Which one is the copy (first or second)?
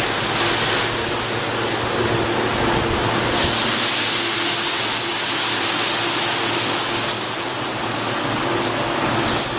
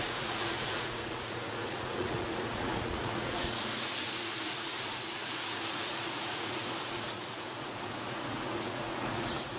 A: second